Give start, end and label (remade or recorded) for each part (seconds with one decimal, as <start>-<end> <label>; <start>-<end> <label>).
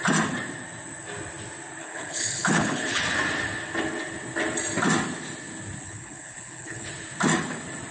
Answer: 0.0-1.8 recorded; 1.8-3.0 remade; 3.0-5.8 recorded; 5.8-6.9 remade; 6.9-7.9 recorded